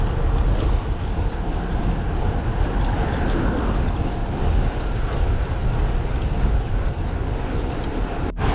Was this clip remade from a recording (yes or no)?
no